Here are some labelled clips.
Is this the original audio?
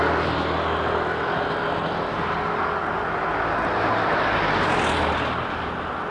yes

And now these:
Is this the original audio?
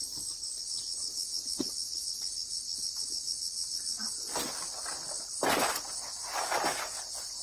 yes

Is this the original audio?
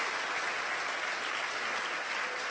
yes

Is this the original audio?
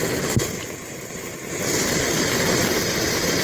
yes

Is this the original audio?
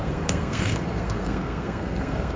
no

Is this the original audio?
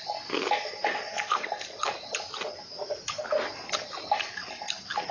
yes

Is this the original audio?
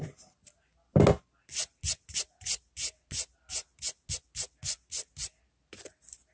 yes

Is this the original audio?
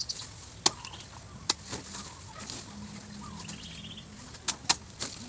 yes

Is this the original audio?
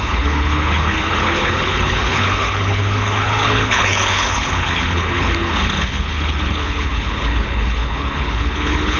no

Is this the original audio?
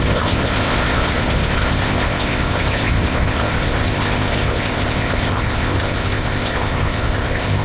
no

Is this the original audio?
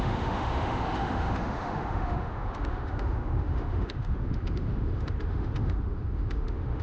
no